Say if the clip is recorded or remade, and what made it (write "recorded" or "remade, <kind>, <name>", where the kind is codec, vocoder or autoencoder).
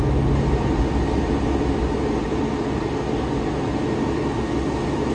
recorded